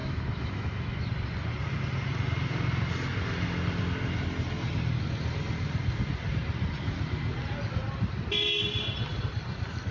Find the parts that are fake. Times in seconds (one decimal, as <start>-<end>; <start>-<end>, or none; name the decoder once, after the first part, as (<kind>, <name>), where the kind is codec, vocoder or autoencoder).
0.0-1.0 (autoencoder, DAC-VAE)